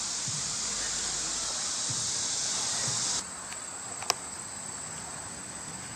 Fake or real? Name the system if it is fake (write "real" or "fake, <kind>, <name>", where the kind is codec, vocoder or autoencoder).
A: real